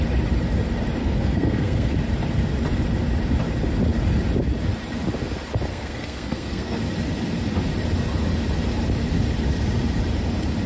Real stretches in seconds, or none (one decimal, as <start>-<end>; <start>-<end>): 0.0-1.0; 1.9-5.7; 6.8-10.7